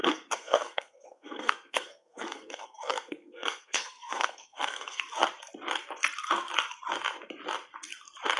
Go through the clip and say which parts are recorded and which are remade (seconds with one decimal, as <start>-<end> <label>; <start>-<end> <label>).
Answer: 0.0-5.0 remade; 5.0-8.4 recorded